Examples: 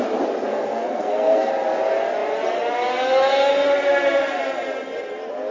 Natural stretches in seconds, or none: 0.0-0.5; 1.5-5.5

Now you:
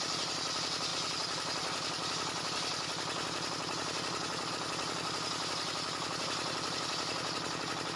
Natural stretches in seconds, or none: 0.0-8.0

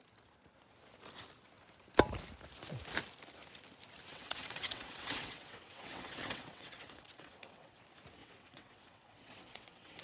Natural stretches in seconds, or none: 0.0-4.1; 7.8-8.2